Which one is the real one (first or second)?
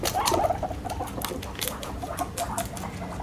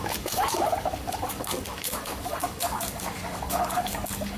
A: first